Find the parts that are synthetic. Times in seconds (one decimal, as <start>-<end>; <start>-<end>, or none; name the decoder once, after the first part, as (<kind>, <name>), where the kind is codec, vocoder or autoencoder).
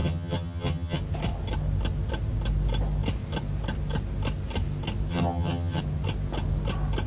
0.0-1.0 (vocoder, HiFi-GAN); 5.1-5.8